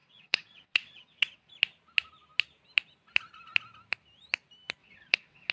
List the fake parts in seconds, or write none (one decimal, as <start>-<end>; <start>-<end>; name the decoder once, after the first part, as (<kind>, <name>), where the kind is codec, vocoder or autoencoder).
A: 0.0-1.5 (vocoder, WaveNeXt); 4.8-5.5